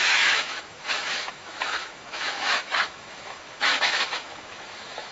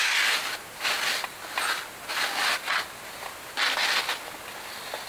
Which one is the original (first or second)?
second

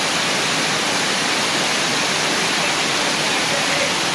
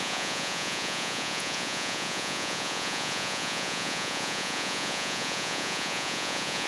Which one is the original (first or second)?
first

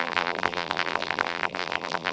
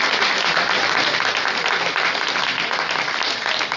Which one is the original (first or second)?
second